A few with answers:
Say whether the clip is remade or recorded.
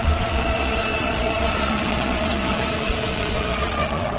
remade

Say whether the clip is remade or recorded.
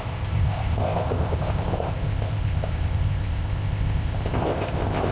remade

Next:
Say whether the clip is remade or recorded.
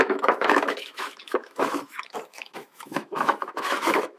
remade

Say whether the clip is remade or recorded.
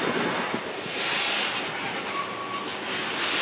recorded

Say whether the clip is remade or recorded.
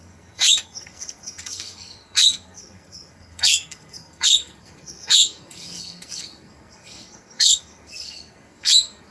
remade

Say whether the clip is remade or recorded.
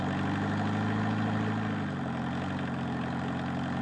recorded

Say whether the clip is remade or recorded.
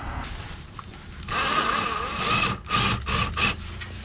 recorded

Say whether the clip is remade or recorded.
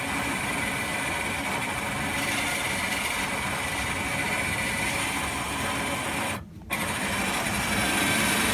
recorded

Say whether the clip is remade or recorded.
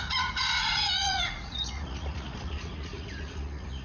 remade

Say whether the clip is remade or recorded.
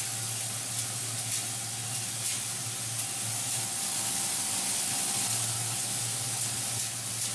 recorded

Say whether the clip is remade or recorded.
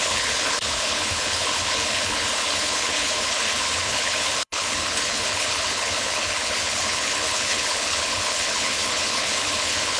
remade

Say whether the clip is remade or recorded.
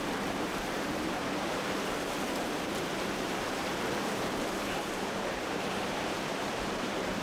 remade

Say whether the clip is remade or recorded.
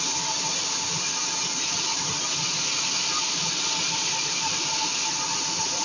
recorded